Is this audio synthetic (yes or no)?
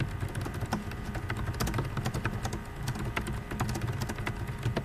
no